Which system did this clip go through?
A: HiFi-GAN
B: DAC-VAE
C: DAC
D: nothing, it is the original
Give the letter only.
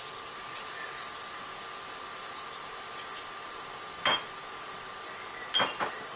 D